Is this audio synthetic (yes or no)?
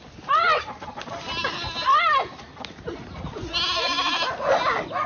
no